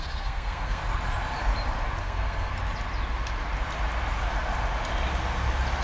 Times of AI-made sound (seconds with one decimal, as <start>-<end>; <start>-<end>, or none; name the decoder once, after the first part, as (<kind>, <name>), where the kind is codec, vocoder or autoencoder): 0.0-0.8 (codec, SNAC); 2.0-2.5